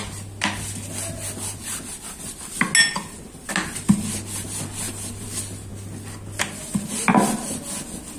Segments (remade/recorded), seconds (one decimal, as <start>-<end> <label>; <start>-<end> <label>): 0.0-8.2 recorded